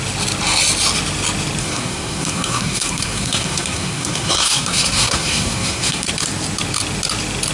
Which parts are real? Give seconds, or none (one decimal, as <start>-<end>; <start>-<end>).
0.0-1.6; 6.1-7.5

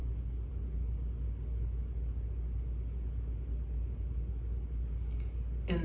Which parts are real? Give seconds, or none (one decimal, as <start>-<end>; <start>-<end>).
0.0-5.8